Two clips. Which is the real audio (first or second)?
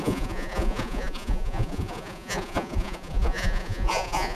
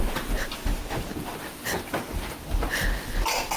second